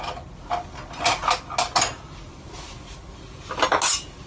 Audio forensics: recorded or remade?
recorded